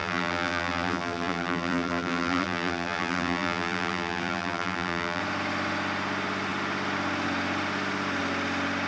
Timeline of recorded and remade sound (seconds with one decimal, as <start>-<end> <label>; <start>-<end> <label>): 0.0-5.2 remade; 5.2-8.9 recorded